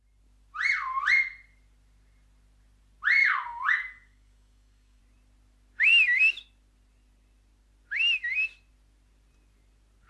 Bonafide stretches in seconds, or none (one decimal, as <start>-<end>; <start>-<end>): 0.0-3.2; 5.0-10.1